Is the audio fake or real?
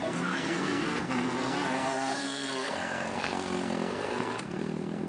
fake